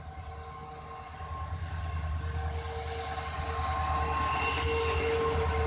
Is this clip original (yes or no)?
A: yes